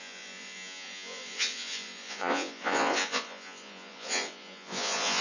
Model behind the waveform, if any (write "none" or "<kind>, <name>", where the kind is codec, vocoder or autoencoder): vocoder, Vocos